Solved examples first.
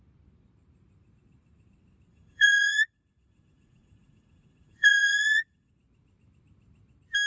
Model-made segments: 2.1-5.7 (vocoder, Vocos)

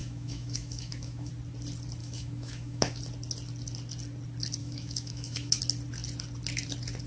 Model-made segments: 0.0-1.3 (autoencoder, DAC-VAE); 2.0-3.0; 4.6-5.6

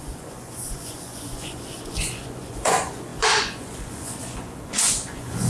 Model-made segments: 0.0-5.5 (vocoder, Vocos)

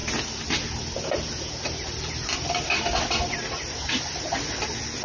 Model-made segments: none

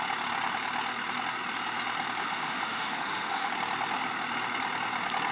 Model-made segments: 2.2-3.5 (autoencoder, DAC-VAE)

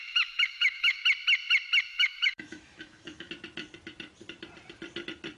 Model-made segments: 0.0-1.0 (autoencoder, DAC-VAE); 1.9-3.3

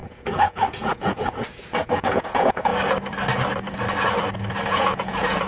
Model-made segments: 0.0-2.7 (vocoder, Vocos); 4.7-5.5